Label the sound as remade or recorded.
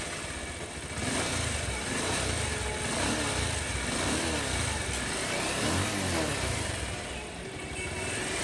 recorded